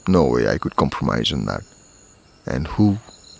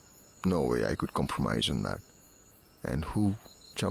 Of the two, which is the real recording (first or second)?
first